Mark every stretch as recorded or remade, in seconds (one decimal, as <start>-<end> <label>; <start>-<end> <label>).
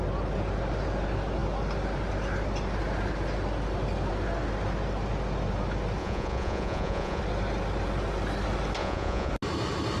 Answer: 0.0-6.0 recorded; 6.0-7.2 remade; 7.2-8.8 recorded; 8.8-9.3 remade; 9.3-10.0 recorded